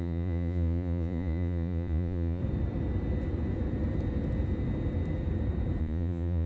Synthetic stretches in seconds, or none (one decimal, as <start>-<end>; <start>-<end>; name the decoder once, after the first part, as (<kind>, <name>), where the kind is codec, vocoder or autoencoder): 0.0-2.4 (vocoder, Vocos); 5.8-6.5